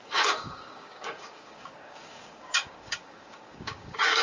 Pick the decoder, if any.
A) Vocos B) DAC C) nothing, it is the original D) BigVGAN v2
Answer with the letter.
B